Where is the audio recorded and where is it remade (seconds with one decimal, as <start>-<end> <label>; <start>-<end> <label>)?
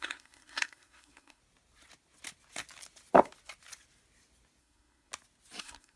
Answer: 0.0-1.4 remade; 1.4-4.6 recorded; 4.6-5.1 remade; 5.1-5.6 recorded; 5.6-6.0 remade